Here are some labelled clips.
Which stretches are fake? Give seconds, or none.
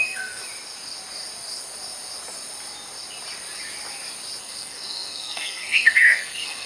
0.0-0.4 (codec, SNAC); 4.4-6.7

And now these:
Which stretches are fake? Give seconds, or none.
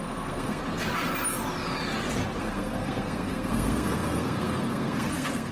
0.0-0.6 (codec, SNAC); 2.4-5.5